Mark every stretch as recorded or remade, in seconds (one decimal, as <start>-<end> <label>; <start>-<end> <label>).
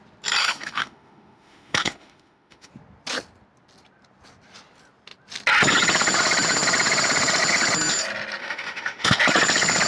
0.0-0.4 recorded; 0.4-2.7 remade; 2.7-8.4 recorded; 8.4-9.2 remade; 9.2-9.9 recorded